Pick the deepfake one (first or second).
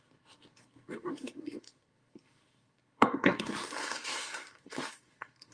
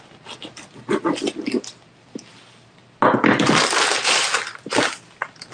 first